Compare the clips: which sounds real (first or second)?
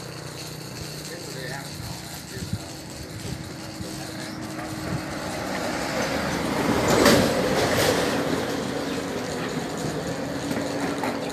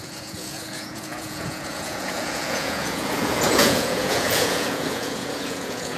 first